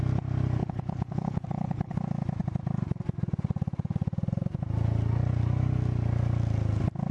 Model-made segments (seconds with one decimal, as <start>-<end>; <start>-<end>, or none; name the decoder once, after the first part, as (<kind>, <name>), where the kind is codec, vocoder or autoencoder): 0.6-2.0 (codec, HILCodec)